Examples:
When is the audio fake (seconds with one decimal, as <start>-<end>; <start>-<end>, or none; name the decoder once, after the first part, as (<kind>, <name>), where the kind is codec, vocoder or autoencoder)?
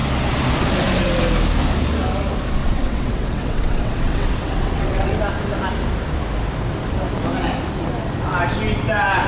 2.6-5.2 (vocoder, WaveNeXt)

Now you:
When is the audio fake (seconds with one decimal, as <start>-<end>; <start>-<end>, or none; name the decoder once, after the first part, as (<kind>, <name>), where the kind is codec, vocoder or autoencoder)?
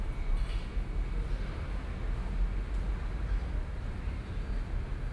3.0-4.3 (vocoder, BigVGAN v2)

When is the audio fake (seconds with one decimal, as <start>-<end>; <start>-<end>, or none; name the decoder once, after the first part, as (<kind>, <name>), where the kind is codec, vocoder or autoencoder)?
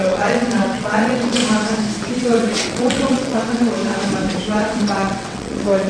0.0-1.4 (vocoder, WaveNeXt); 2.2-3.8; 4.8-5.9